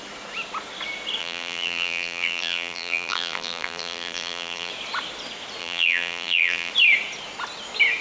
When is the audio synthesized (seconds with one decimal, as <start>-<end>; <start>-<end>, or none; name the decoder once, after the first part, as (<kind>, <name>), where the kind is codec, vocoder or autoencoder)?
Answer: 1.2-4.7 (vocoder, BigVGAN v2); 5.6-6.7